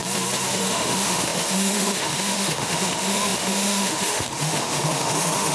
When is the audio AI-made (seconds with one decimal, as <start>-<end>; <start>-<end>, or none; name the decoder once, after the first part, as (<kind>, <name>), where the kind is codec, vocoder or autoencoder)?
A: 0.5-5.5 (autoencoder, DAC-VAE)